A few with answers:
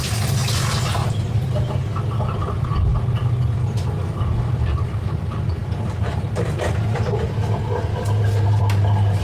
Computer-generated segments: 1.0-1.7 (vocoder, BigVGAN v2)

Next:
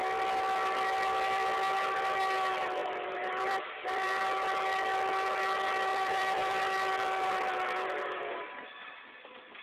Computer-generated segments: 2.8-4.2 (vocoder, BigVGAN v2); 5.9-7.3

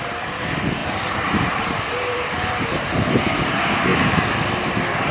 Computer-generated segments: 0.8-3.1 (vocoder, BigVGAN v2)

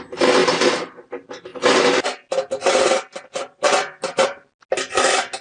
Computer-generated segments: 0.4-1.1 (vocoder, BigVGAN v2)

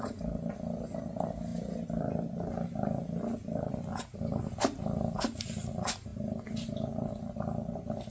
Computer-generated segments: none

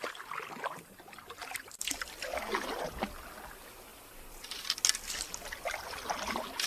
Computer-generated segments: 1.4-1.9 (vocoder, BigVGAN v2); 3.9-4.6

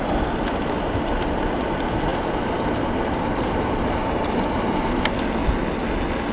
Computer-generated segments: 2.1-5.0 (vocoder, BigVGAN v2)

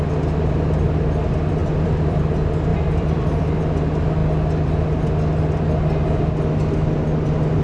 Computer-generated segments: 1.6-2.2 (vocoder, BigVGAN v2); 2.7-3.6